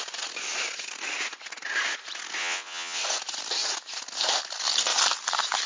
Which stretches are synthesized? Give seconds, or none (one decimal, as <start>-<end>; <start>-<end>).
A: 2.4-3.0